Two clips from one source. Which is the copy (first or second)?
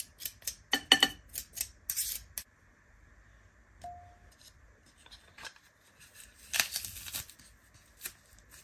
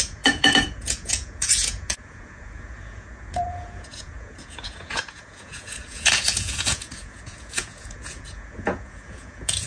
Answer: second